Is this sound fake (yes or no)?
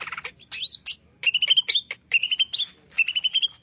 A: no